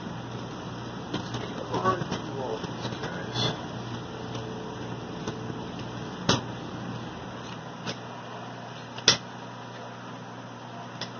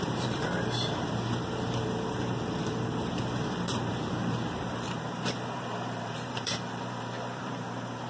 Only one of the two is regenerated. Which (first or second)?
second